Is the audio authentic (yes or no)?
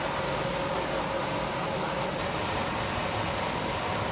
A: yes